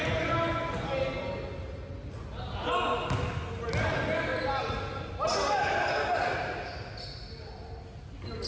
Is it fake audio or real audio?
real